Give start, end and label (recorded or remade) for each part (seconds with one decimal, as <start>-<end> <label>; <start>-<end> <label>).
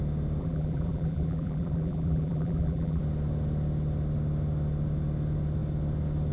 0.0-0.4 recorded; 0.4-3.0 remade; 3.0-6.3 recorded